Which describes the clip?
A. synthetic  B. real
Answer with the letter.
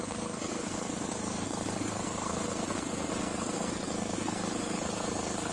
A